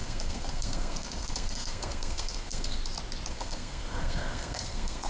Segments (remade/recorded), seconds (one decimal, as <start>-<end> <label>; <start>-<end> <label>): 0.0-2.8 remade; 2.8-3.3 recorded; 3.3-5.1 remade